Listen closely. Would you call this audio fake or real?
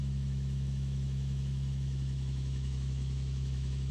fake